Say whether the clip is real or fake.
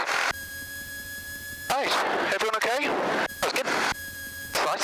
real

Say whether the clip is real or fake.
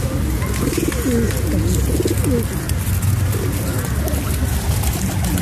real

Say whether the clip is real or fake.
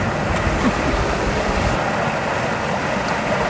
real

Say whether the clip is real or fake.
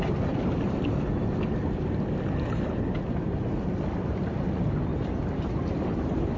real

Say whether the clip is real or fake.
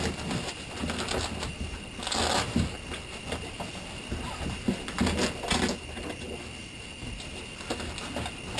real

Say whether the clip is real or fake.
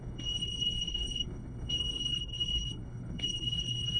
fake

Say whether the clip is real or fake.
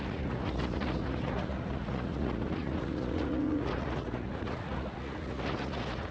fake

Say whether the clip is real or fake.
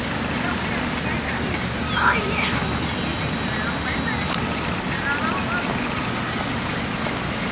real